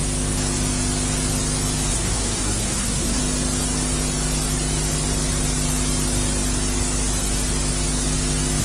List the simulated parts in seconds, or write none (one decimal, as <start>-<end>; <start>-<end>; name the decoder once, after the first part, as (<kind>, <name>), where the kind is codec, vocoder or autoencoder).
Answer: 1.9-3.2 (codec, SNAC)